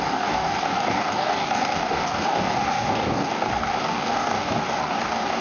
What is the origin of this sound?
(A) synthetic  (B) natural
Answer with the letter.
A